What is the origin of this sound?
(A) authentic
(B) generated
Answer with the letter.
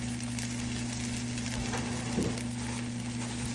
A